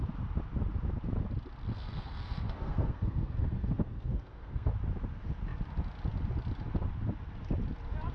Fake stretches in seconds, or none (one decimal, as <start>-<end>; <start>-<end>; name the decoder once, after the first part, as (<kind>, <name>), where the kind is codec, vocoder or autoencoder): 1.7-4.7 (codec, SNAC)